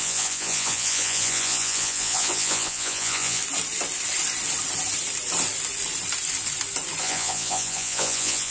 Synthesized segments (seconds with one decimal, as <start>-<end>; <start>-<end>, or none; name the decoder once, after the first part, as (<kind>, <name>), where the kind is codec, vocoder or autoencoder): 0.0-3.4 (vocoder, Vocos); 7.0-8.5